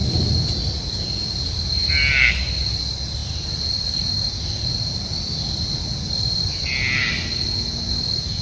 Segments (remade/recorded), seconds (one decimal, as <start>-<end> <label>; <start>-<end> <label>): 0.0-8.4 recorded